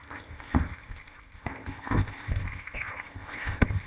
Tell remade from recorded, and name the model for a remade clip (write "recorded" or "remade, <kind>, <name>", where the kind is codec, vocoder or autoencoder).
remade, codec, ZipCodec